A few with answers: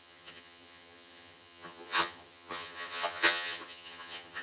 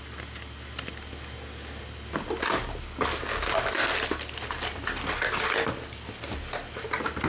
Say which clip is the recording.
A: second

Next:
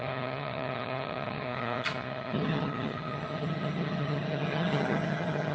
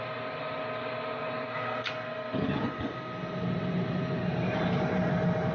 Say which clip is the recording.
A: second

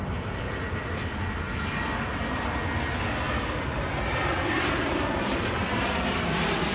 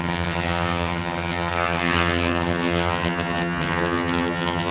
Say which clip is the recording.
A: first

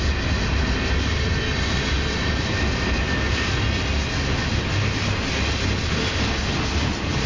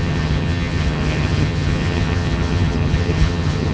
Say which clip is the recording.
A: first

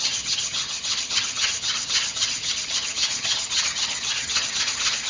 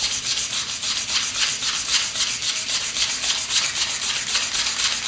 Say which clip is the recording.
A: second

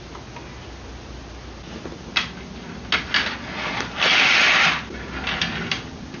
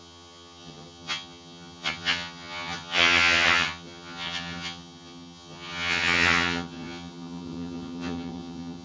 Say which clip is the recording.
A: first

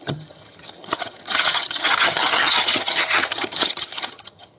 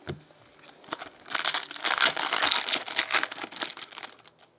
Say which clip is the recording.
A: second